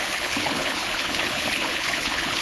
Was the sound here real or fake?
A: fake